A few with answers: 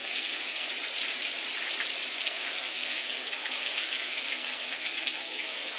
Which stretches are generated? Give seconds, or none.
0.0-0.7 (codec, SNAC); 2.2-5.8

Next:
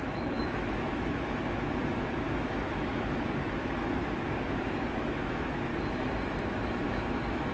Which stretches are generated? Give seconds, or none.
0.0-5.7 (autoencoder, DAC-VAE); 6.4-7.5

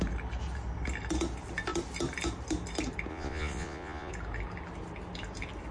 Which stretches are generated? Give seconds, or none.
3.1-4.1 (vocoder, Vocos)